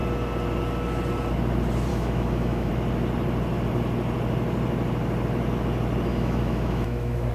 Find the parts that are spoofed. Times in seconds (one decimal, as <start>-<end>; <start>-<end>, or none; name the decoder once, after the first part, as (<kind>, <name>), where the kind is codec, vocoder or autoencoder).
1.9-2.7 (autoencoder, DAC-VAE); 6.1-7.3